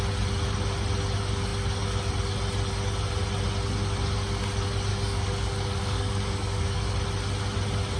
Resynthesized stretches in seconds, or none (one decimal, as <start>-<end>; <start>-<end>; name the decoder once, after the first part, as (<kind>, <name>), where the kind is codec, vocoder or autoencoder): 4.9-6.9 (codec, DAC)